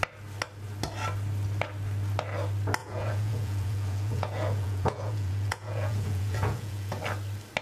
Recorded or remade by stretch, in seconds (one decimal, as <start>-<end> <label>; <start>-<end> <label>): 0.0-2.8 recorded; 2.8-7.0 remade; 7.0-7.6 recorded